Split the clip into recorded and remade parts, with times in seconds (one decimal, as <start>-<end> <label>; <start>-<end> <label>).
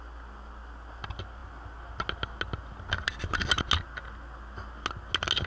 0.0-5.5 recorded